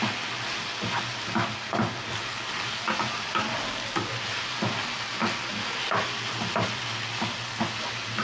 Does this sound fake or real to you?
real